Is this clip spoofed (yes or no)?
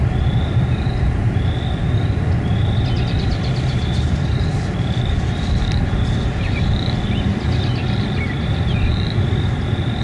yes